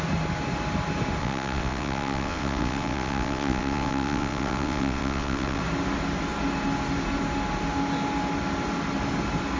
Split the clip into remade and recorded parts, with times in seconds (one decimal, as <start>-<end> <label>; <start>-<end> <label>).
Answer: 0.0-1.2 recorded; 1.2-5.6 remade; 5.6-9.6 recorded